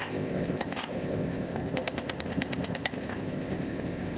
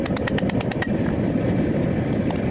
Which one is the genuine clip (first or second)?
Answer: second